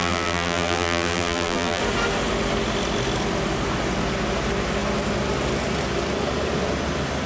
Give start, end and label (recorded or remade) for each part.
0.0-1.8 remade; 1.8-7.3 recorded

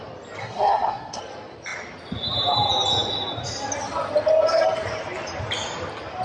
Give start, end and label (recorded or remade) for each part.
0.0-0.4 recorded; 0.4-1.2 remade; 1.2-6.2 recorded

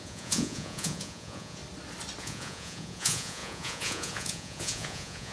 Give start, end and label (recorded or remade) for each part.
0.0-1.6 remade; 1.6-2.2 recorded; 2.2-5.3 remade

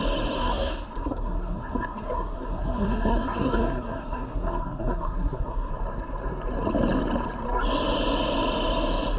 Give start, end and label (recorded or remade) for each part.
0.0-0.4 recorded; 0.4-5.7 remade; 5.7-9.2 recorded